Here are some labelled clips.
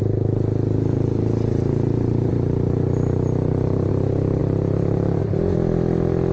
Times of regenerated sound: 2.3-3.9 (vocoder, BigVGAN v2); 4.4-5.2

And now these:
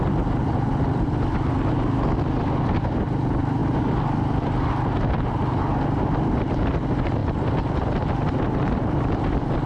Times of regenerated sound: none

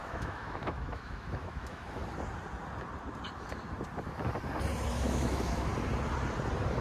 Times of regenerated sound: 0.0-2.0 (autoencoder, DAC-VAE); 4.9-5.7

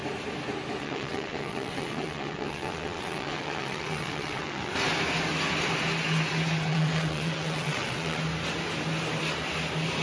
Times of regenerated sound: 0.8-4.7 (vocoder, WaveNeXt); 6.7-8.2

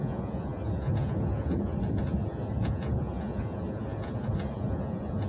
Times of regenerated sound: 0.0-5.3 (vocoder, Vocos)

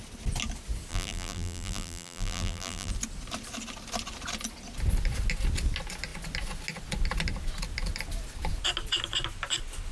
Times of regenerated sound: 0.9-2.9 (vocoder, BigVGAN v2)

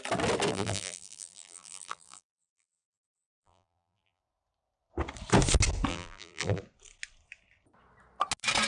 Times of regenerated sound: 0.5-4.2 (vocoder, BigVGAN v2); 5.9-6.6